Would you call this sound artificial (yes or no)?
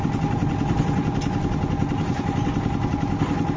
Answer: no